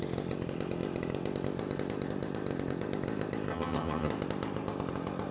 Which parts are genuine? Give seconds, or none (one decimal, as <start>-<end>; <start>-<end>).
0.0-3.5; 4.1-5.3